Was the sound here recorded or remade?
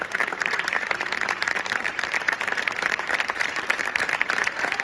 remade